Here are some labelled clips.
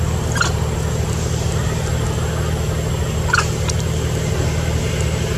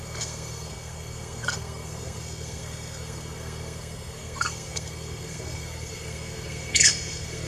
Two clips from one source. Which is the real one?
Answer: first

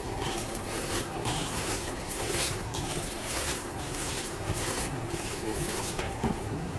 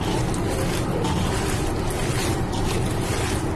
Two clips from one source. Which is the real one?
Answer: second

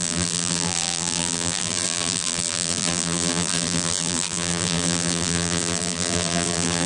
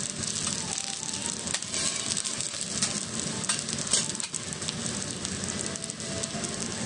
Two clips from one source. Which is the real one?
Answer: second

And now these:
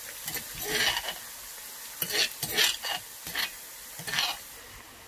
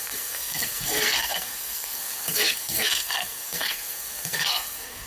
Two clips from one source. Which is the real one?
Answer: first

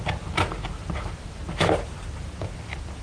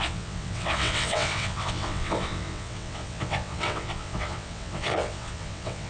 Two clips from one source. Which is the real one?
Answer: first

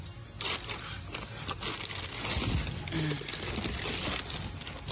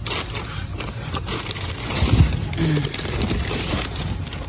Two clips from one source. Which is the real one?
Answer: first